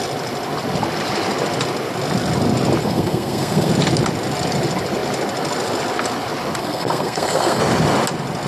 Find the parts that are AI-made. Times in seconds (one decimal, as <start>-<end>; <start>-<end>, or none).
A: 2.8-3.7; 6.6-7.6